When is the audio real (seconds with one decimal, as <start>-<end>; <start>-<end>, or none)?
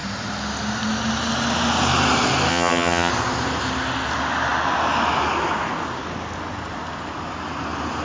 0.0-2.5; 3.1-8.0